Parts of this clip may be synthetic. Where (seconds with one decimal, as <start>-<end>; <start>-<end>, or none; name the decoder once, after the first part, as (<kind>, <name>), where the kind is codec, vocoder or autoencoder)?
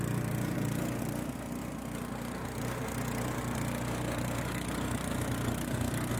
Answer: none